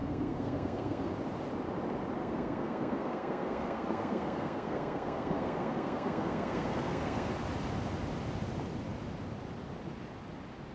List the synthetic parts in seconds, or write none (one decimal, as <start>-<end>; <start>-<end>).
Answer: 0.0-1.1; 2.2-7.3